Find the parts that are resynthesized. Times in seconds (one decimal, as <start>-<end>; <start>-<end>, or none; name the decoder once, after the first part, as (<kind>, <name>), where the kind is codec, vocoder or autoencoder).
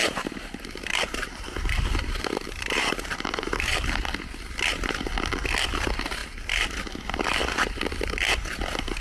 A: 0.0-4.1 (vocoder, BigVGAN v2); 6.2-6.8; 7.4-7.9